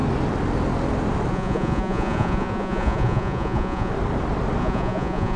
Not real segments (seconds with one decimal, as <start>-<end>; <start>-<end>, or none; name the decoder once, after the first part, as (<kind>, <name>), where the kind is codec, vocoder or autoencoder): 1.3-3.9 (vocoder, Vocos); 4.6-5.4